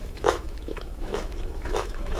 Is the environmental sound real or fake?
fake